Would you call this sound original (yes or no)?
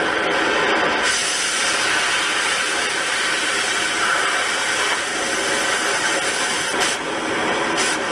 yes